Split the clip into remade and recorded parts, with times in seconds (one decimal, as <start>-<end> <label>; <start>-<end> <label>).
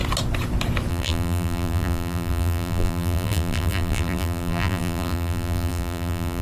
0.0-0.9 recorded; 0.9-6.4 remade